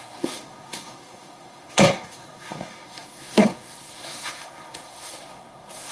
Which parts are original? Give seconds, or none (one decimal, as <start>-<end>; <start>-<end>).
none